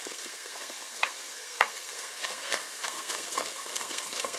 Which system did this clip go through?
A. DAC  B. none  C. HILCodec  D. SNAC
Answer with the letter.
D